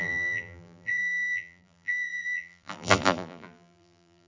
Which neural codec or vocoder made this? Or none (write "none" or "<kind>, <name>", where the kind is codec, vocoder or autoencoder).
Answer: vocoder, BigVGAN v2